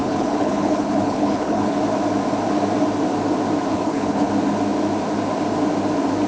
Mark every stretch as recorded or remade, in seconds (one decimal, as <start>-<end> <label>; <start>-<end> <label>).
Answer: 0.0-1.8 remade; 1.8-3.7 recorded; 3.7-4.3 remade; 4.3-6.3 recorded